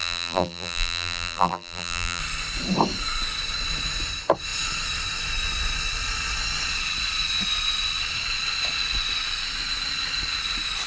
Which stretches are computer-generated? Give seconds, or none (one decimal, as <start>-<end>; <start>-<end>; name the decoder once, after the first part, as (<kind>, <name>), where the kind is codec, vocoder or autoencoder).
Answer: 0.0-2.2 (vocoder, BigVGAN v2)